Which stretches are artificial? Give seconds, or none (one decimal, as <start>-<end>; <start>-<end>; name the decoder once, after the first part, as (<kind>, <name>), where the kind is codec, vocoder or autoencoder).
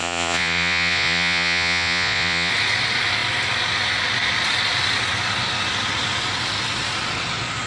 0.0-2.5 (vocoder, Vocos)